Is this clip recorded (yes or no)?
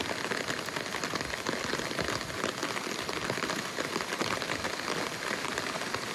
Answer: yes